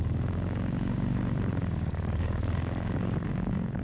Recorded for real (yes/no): no